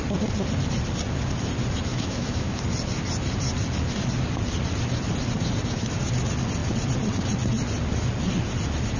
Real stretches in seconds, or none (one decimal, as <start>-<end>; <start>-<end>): 0.0-1.9; 2.6-9.0

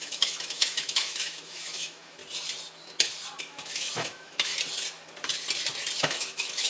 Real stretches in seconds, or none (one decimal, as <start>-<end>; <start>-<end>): 2.2-3.4; 4.5-6.0

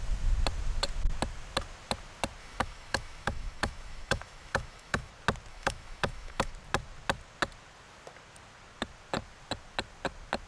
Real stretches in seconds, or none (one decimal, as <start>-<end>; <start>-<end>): 0.0-2.4; 5.1-5.5; 6.5-10.5

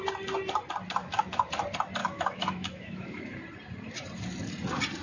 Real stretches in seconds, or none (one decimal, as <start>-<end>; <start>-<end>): 0.0-1.0; 1.5-2.0; 3.4-5.0

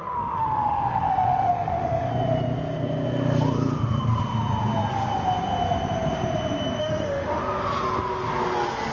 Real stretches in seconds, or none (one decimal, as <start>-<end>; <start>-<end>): 2.1-6.8; 7.4-8.9

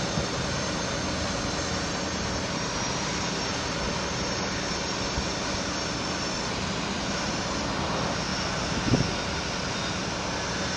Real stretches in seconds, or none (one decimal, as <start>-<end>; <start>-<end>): 0.0-10.8